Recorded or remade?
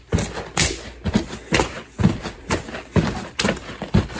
recorded